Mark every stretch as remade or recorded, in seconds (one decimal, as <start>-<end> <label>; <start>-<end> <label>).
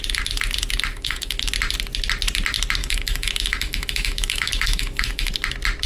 0.0-0.9 recorded; 0.9-1.5 remade; 1.5-2.8 recorded; 2.8-5.3 remade; 5.3-5.9 recorded